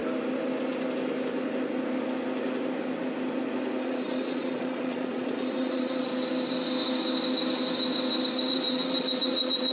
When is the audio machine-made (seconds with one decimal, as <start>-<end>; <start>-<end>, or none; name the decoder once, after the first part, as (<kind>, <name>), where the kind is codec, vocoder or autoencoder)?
3.8-6.1 (vocoder, Vocos); 8.5-9.7

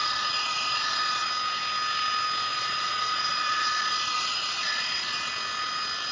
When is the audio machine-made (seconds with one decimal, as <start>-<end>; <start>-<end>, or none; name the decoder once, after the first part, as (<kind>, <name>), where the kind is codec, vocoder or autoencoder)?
0.0-1.3 (vocoder, Vocos); 2.5-5.3